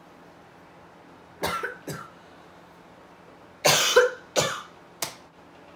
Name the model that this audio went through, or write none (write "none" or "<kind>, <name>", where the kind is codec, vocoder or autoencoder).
none